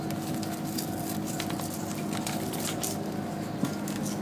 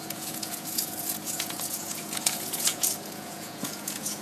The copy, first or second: second